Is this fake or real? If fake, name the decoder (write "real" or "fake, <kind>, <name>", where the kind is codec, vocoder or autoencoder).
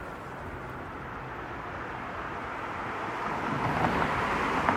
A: real